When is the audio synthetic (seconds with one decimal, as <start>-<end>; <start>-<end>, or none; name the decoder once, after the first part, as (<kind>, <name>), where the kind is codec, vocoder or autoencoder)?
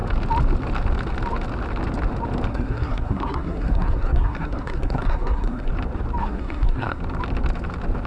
2.5-5.7 (codec, SNAC); 6.2-7.0